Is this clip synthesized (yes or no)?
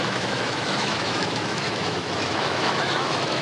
yes